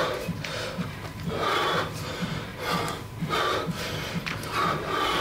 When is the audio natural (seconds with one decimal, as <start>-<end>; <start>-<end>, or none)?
2.5-4.1